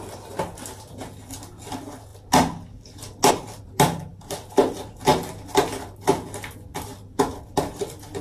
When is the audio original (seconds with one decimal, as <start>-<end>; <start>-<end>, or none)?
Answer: 0.0-8.2